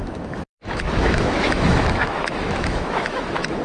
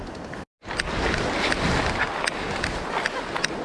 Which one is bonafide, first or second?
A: second